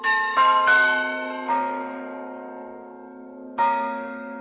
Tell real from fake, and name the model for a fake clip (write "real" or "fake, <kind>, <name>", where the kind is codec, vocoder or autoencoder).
fake, codec, DAC